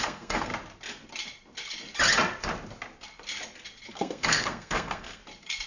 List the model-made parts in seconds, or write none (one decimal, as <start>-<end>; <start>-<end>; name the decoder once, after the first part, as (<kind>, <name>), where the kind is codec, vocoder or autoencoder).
0.0-0.5 (codec, SNAC); 3.9-5.2